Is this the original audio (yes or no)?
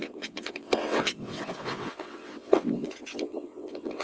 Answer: no